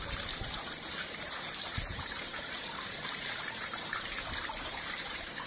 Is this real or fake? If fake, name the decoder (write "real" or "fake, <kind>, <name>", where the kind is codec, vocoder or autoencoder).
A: fake, vocoder, BigVGAN v2